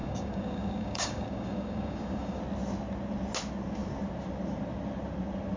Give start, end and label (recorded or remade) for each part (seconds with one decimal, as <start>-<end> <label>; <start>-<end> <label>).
0.0-2.4 remade; 2.4-5.6 recorded